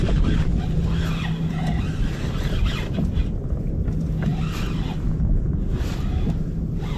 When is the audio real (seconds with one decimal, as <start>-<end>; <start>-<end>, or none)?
0.0-7.0